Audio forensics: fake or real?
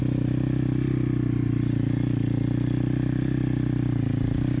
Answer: real